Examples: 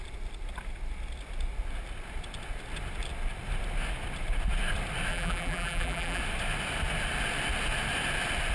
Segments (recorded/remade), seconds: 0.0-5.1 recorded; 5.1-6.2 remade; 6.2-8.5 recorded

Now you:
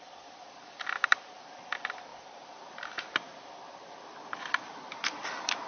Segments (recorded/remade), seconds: 0.0-5.7 recorded

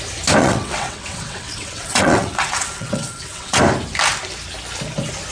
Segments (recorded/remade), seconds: 0.0-0.4 recorded; 0.4-3.6 remade; 3.6-5.3 recorded

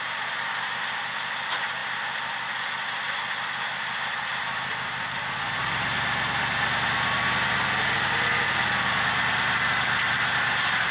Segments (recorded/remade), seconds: 0.0-10.9 recorded

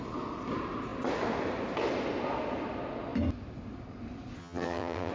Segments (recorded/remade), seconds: 0.0-4.4 recorded; 4.4-5.1 remade

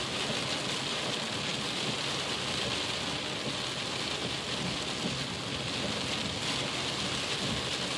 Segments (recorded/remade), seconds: 0.0-8.0 recorded

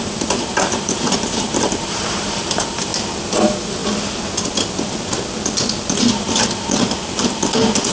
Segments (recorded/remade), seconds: 0.0-2.9 remade; 2.9-3.4 recorded; 3.4-3.8 remade; 3.8-7.9 recorded